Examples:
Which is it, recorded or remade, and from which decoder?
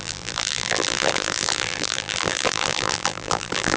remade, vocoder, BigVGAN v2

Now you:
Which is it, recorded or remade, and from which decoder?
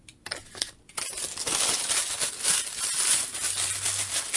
recorded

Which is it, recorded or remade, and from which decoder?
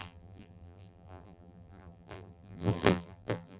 remade, vocoder, BigVGAN v2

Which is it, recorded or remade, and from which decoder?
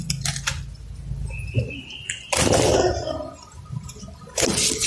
recorded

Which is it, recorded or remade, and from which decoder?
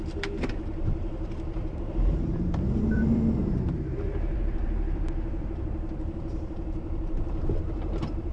remade, vocoder, BigVGAN v2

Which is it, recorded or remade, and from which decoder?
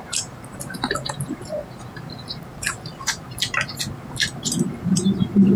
remade, vocoder, BigVGAN v2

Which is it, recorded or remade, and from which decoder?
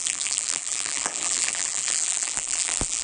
remade, vocoder, BigVGAN v2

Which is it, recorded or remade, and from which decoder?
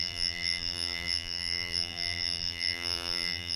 remade, vocoder, BigVGAN v2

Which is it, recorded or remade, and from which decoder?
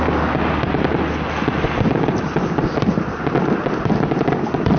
recorded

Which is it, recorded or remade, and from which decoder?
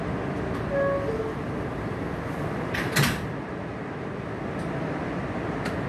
recorded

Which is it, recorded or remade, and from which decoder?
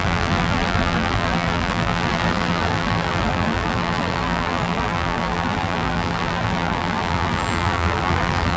remade, vocoder, BigVGAN v2